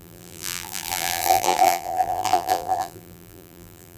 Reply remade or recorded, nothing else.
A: remade